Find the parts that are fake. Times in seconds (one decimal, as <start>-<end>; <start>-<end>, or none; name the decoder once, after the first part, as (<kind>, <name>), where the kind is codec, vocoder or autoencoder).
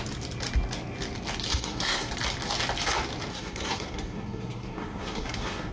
1.5-2.1 (codec, SNAC); 3.3-5.7